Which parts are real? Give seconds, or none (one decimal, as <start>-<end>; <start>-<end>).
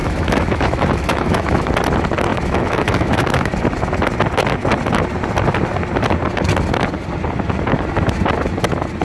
1.7-2.3; 3.5-9.0